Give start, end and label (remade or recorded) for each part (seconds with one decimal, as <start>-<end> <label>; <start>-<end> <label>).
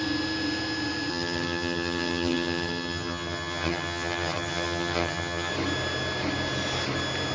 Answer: 0.0-1.1 recorded; 1.1-5.5 remade; 5.5-7.3 recorded